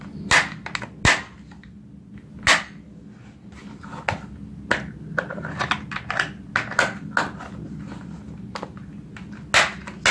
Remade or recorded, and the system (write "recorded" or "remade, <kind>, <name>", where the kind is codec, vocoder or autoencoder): recorded